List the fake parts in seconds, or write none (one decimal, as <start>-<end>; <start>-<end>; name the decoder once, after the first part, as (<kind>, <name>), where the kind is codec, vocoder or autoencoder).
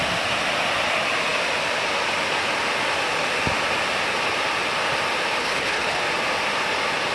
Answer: 5.4-6.0 (codec, HILCodec)